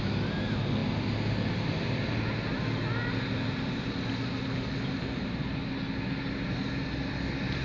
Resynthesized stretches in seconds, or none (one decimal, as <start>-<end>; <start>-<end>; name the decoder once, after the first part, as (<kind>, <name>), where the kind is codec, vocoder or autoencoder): none